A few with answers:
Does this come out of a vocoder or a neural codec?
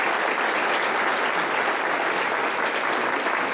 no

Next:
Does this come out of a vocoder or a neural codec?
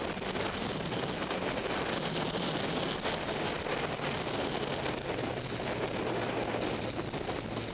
no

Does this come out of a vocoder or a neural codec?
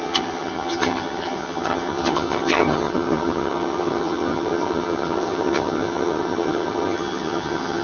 yes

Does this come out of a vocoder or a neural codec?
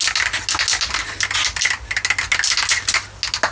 no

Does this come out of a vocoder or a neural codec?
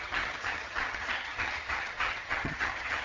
yes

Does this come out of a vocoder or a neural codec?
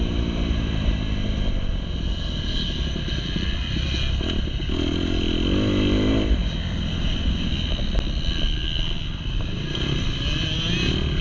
no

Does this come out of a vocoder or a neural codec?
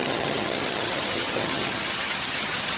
yes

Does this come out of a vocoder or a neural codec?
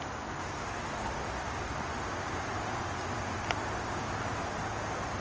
no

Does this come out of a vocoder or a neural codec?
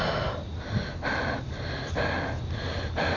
no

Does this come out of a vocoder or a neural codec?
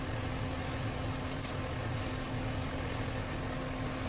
no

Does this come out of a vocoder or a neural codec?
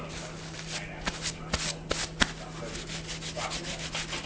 no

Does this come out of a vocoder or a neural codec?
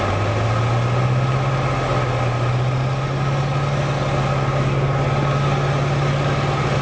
no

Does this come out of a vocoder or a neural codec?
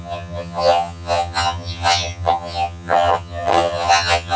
yes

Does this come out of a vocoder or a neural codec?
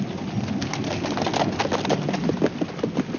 no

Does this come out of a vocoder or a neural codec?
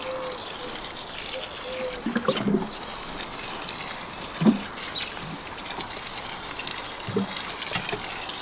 no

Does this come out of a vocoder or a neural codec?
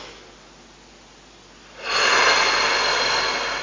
no